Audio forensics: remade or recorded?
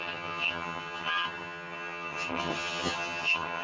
remade